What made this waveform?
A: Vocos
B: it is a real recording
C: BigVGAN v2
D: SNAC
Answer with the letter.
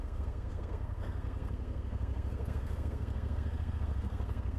D